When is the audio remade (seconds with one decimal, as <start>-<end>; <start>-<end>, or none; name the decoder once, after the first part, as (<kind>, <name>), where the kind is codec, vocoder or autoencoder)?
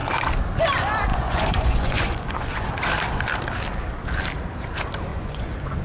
1.1-2.7 (vocoder, Vocos); 5.1-5.8